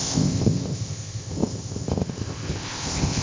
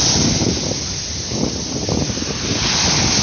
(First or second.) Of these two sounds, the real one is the second